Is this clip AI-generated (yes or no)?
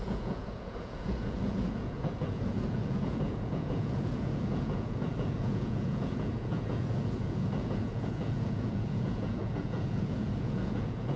yes